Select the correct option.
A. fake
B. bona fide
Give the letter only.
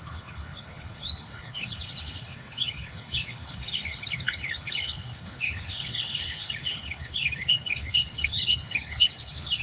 A